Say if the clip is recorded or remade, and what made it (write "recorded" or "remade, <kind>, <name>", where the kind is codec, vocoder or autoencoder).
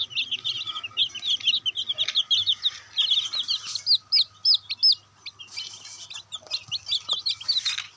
recorded